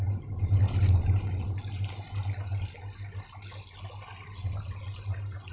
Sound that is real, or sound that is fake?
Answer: real